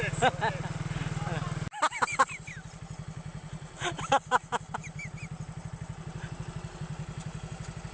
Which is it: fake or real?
real